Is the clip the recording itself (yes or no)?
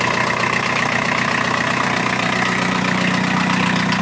yes